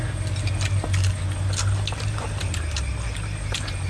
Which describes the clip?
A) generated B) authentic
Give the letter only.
B